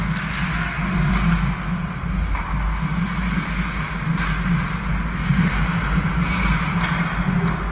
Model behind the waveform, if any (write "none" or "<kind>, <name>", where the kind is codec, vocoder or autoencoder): none